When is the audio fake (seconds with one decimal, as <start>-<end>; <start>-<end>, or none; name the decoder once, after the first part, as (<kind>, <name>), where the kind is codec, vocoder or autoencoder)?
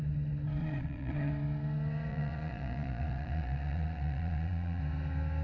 0.6-1.3 (vocoder, Vocos); 2.1-4.8